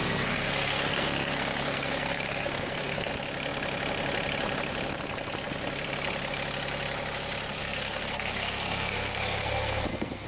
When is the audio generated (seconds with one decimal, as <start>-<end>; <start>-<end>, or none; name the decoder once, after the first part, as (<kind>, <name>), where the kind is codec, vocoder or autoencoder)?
0.0-3.1 (codec, SNAC); 7.6-10.3